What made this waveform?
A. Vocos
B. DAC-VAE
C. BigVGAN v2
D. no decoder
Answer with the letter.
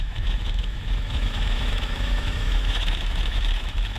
B